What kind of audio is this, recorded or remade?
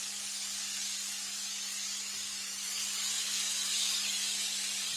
remade